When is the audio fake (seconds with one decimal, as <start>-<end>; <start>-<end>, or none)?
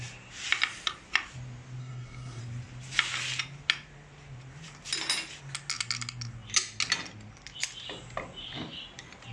1.8-2.4